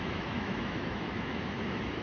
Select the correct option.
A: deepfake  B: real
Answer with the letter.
A